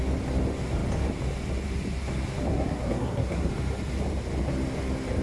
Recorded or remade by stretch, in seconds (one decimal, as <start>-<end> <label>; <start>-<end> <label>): 0.0-2.5 recorded; 2.5-3.5 remade; 3.5-5.2 recorded